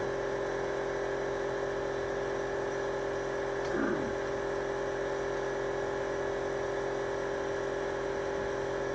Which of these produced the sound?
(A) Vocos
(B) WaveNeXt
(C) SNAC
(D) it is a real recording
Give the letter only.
D